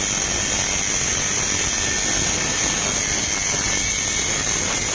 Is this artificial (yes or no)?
no